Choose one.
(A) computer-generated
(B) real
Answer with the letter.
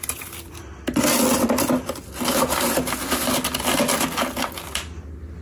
B